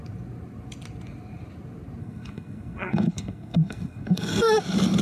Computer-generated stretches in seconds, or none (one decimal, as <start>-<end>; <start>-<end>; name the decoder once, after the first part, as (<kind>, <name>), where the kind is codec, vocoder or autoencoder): 2.0-4.6 (codec, SNAC)